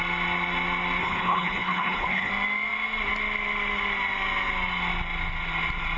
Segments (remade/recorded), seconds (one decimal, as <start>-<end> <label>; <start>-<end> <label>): 0.0-1.0 recorded; 1.0-2.3 remade; 2.3-6.0 recorded